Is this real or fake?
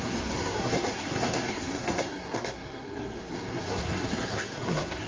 fake